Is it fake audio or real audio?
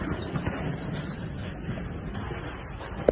real